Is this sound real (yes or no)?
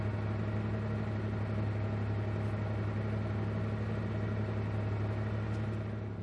yes